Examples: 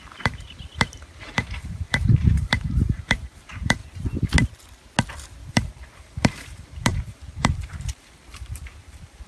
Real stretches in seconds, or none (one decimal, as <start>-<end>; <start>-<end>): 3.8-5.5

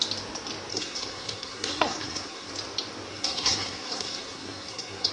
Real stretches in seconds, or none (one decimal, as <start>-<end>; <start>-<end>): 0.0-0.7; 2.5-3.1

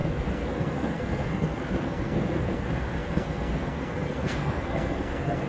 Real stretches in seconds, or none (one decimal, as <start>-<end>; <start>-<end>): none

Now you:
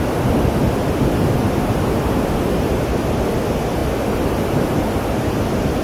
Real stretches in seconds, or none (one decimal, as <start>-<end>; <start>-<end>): 0.0-3.8; 5.2-5.8